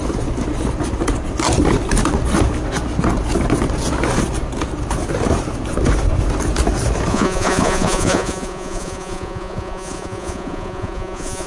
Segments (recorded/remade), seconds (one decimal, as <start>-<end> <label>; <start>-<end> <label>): 0.0-7.1 recorded; 7.1-11.5 remade